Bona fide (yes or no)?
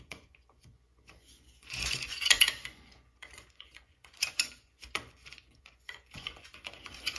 no